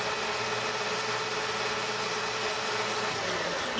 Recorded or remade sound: recorded